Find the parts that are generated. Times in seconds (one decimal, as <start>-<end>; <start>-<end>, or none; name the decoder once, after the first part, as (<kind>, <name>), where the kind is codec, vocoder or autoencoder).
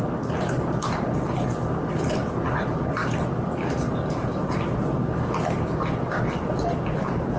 none